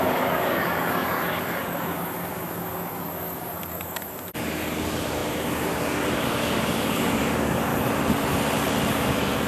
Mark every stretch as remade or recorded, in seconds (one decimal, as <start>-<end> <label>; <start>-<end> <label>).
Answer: 0.0-7.7 remade; 7.7-8.8 recorded; 8.8-9.5 remade